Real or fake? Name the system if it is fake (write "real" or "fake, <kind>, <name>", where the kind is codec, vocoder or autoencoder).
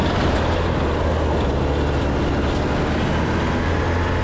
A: real